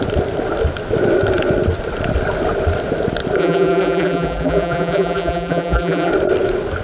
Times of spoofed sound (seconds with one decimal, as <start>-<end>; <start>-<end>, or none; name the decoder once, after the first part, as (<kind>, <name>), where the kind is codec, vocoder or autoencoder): 3.4-6.1 (vocoder, BigVGAN v2)